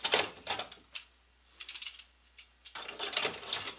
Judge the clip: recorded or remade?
recorded